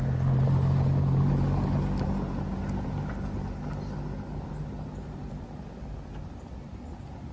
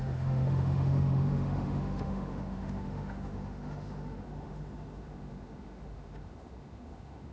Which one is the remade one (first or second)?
second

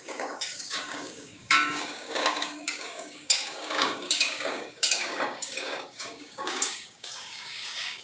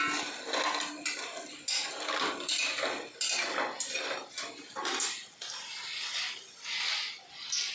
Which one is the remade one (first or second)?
first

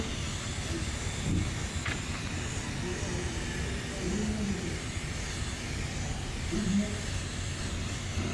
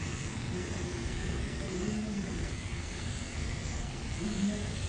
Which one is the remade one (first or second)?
second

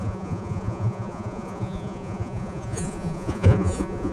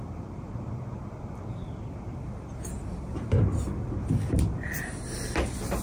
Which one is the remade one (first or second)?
first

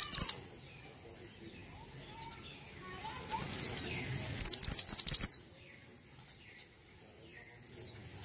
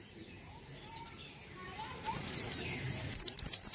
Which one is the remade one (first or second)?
second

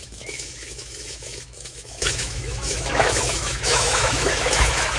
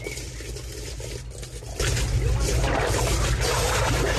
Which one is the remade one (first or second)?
first